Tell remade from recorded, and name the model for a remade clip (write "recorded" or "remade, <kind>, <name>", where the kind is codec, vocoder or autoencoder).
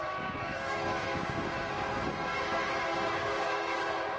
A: remade, codec, DAC